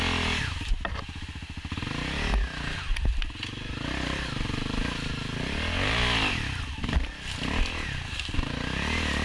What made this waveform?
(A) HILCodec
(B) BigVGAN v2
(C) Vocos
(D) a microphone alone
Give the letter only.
D